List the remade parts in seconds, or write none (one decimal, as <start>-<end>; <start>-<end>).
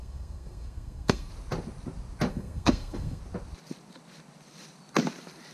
0.0-1.3; 2.3-3.2